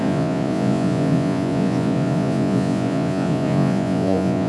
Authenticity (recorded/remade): remade